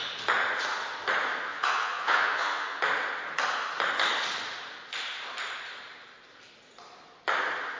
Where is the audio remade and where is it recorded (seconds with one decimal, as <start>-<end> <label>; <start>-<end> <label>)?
0.0-1.5 recorded; 1.5-2.8 remade; 2.8-7.8 recorded